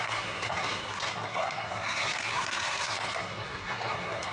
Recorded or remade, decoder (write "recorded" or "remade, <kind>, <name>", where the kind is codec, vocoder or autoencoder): remade, codec, SNAC